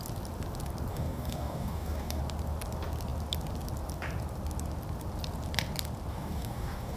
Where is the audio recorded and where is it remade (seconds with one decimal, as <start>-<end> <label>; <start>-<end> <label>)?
0.0-0.9 recorded; 0.9-2.2 remade; 2.2-6.1 recorded; 6.1-7.0 remade